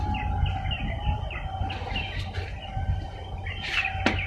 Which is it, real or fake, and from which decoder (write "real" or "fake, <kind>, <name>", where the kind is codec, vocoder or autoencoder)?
real